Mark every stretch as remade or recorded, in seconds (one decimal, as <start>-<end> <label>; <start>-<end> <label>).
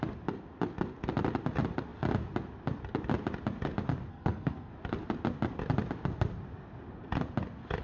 0.0-4.1 recorded; 4.1-4.7 remade; 4.7-7.8 recorded